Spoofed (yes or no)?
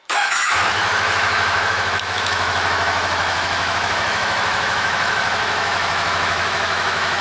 yes